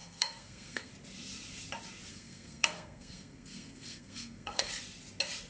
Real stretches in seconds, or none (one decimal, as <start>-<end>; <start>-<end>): 0.9-2.1; 4.7-5.5